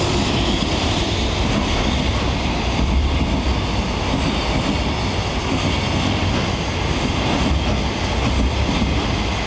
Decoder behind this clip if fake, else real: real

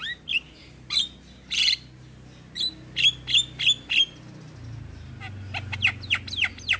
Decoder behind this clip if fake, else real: real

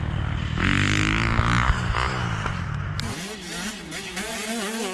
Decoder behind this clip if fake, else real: real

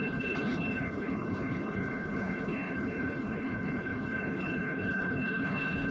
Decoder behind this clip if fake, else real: fake, codec, HILCodec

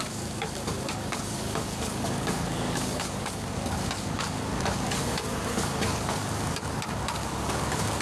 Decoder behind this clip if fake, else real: fake, codec, DAC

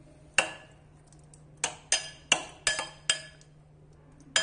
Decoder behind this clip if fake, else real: real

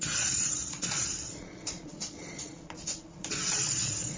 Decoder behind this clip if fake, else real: fake, vocoder, Vocos